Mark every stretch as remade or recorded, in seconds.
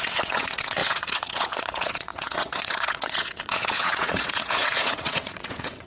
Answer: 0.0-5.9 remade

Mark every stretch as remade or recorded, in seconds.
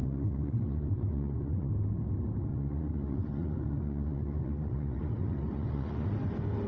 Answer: 0.0-1.7 remade; 1.7-2.5 recorded; 2.5-6.2 remade; 6.2-6.7 recorded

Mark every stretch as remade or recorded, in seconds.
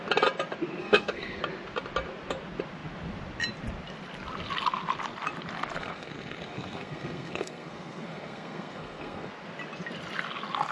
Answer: 0.0-0.8 recorded; 0.8-1.4 remade; 1.4-5.8 recorded; 5.8-9.3 remade; 9.3-10.7 recorded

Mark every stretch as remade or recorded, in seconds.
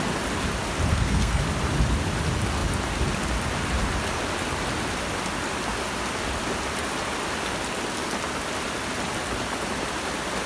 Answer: 0.0-0.9 recorded; 0.9-1.4 remade; 1.4-10.5 recorded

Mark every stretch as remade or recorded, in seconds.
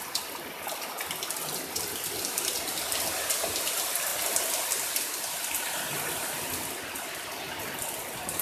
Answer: 0.0-8.4 recorded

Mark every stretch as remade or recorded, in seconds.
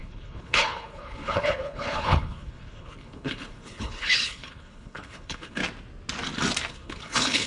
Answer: 0.0-5.6 remade; 5.6-6.7 recorded; 6.7-7.5 remade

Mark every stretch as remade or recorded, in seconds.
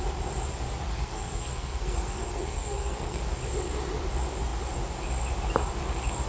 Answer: 0.0-0.9 recorded; 0.9-3.2 remade; 3.2-6.3 recorded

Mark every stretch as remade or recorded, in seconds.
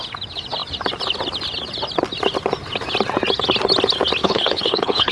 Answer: 0.0-4.2 recorded; 4.2-5.1 remade